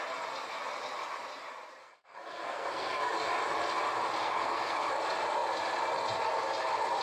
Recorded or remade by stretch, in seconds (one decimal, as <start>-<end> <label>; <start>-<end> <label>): 0.0-1.8 recorded; 1.8-3.3 remade; 3.3-4.2 recorded; 4.2-4.9 remade; 4.9-7.0 recorded